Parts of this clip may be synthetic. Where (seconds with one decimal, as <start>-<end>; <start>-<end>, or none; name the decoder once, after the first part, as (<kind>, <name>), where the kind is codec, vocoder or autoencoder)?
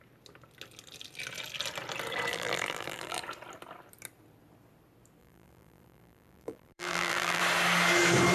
2.3-3.2 (vocoder, BigVGAN v2); 5.2-7.4